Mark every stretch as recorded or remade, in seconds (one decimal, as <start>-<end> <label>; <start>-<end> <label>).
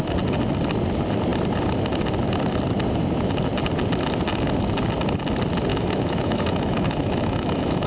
0.0-5.7 recorded; 5.7-7.9 remade